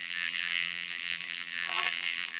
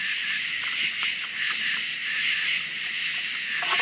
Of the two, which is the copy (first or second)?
first